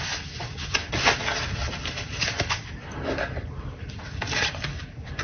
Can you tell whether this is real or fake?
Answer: real